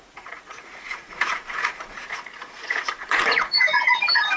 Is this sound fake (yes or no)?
yes